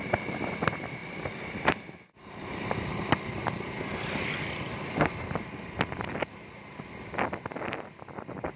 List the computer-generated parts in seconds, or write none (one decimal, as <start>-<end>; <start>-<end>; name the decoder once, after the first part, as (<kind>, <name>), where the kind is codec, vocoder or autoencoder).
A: none